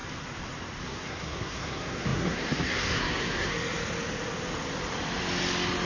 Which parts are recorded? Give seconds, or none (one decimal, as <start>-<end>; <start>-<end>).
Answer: 0.0-0.8; 3.5-5.9